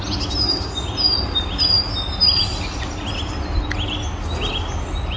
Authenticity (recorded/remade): recorded